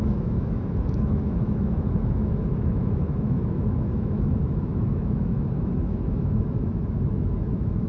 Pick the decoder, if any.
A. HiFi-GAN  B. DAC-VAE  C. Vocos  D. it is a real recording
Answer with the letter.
B